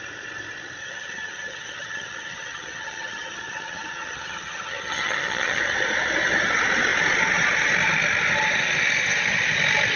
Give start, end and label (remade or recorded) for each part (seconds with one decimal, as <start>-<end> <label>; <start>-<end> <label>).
0.0-0.8 recorded; 0.8-5.6 remade; 5.6-10.0 recorded